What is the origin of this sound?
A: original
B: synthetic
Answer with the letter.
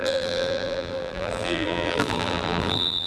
B